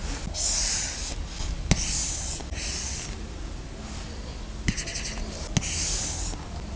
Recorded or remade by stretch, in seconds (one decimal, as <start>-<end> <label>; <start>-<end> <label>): 0.0-6.8 recorded